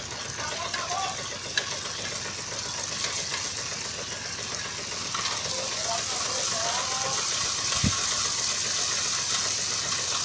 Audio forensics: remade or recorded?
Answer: recorded